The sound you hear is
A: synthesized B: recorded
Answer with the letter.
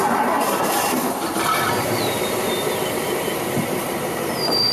A